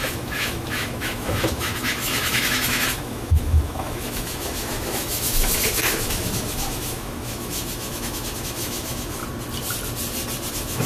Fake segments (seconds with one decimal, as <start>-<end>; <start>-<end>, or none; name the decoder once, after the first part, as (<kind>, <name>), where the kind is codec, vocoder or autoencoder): 0.0-9.2 (autoencoder, DAC-VAE); 10.5-10.9